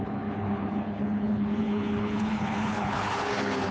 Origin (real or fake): fake